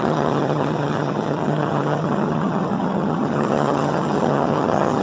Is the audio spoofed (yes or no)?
yes